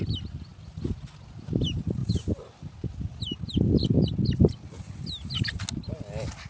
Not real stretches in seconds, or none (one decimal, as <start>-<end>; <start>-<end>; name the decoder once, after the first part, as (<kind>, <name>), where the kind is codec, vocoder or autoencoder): none